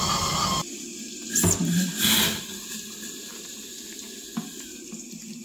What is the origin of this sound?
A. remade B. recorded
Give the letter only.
B